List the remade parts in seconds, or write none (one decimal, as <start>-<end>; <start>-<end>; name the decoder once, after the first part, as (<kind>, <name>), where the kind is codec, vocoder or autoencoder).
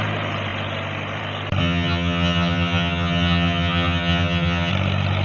1.6-4.7 (vocoder, HiFi-GAN)